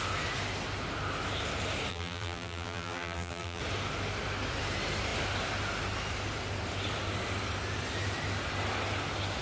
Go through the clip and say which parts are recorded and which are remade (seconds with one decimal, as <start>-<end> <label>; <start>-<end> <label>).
0.0-1.9 recorded; 1.9-3.6 remade; 3.6-9.4 recorded